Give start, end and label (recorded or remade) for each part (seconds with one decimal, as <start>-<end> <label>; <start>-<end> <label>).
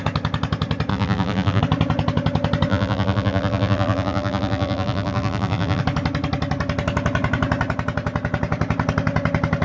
0.0-0.9 recorded; 0.9-1.6 remade; 1.6-2.7 recorded; 2.7-5.8 remade; 5.8-9.6 recorded